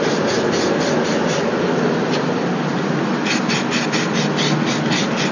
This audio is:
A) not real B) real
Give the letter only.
B